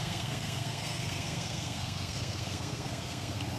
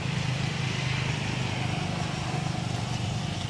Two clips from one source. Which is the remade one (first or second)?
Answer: first